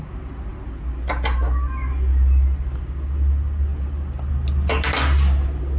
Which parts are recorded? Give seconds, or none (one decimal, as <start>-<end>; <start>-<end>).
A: 0.0-5.8